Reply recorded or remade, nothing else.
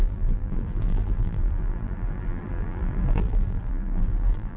remade